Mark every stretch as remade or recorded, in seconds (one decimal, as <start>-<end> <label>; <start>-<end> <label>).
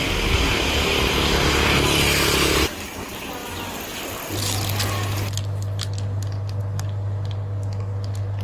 0.0-8.4 recorded